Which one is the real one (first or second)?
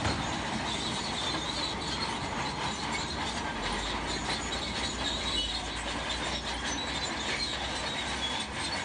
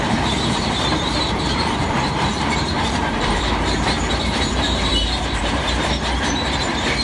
first